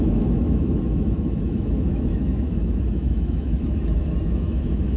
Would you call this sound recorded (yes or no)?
no